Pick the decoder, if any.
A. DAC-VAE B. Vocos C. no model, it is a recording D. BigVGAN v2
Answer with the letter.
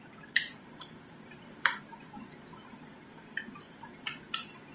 C